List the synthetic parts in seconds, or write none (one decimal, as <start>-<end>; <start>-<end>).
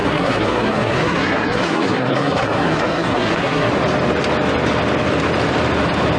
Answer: 0.0-3.7